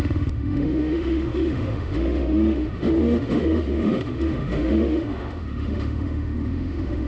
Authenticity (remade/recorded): remade